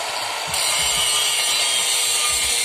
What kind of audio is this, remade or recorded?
recorded